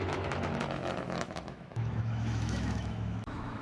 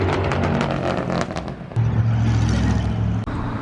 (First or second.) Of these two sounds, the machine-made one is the first